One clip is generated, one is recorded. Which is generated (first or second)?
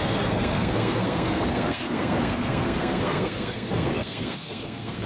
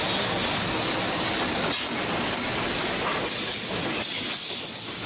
first